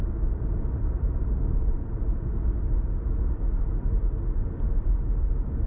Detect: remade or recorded remade